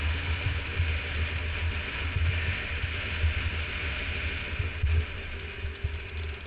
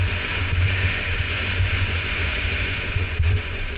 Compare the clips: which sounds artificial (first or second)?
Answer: second